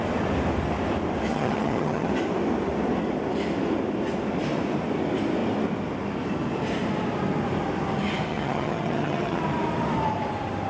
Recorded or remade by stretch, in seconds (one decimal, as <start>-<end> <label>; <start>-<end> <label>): 0.0-1.3 recorded; 1.3-2.1 remade; 2.1-8.3 recorded; 8.3-9.4 remade; 9.4-10.7 recorded